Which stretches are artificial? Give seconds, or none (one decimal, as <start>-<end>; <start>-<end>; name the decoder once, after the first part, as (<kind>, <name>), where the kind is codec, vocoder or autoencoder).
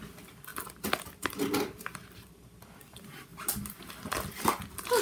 none